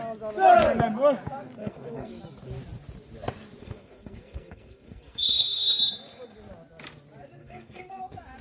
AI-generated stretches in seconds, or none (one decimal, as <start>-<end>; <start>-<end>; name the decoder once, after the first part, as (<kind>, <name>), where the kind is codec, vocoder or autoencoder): 1.6-2.2 (codec, SNAC); 3.6-5.8; 7.4-8.0